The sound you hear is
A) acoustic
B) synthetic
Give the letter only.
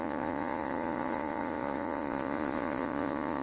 B